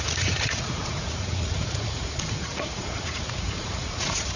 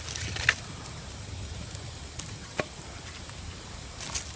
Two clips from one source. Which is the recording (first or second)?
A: second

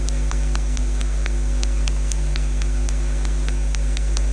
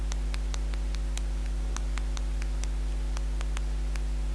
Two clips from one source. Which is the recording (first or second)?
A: second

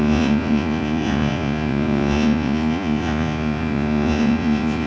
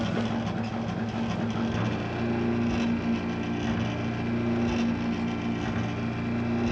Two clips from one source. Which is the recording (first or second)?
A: second